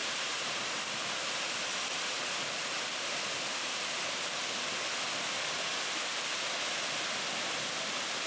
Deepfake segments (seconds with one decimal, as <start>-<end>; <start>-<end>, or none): none